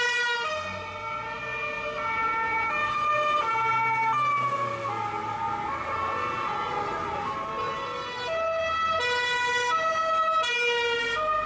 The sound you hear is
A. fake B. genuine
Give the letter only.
B